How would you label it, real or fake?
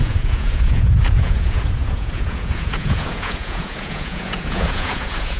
fake